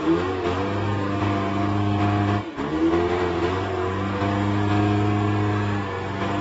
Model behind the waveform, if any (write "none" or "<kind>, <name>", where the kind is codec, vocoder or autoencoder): none